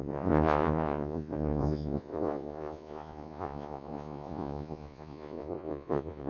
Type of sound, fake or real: fake